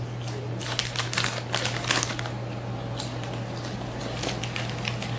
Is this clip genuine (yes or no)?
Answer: yes